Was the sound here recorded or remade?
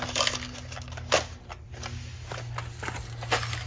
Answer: recorded